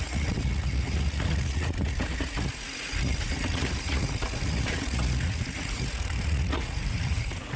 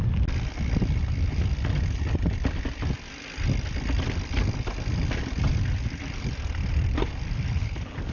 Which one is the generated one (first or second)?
first